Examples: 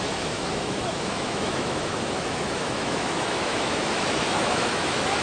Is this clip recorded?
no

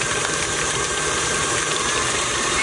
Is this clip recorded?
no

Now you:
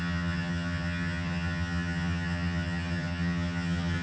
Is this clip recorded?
no